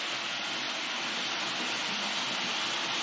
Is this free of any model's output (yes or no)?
yes